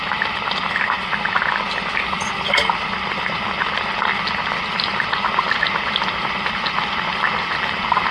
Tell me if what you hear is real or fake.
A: real